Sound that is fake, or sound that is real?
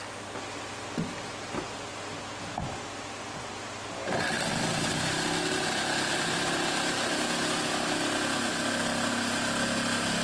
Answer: real